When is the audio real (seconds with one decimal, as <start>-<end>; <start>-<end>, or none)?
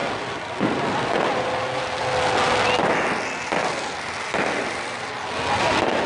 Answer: 0.0-6.1